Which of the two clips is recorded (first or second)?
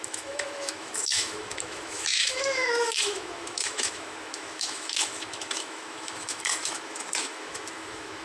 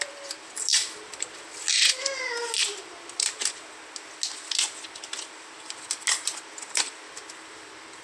second